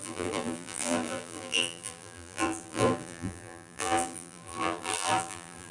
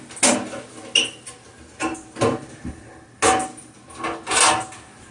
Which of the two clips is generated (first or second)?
first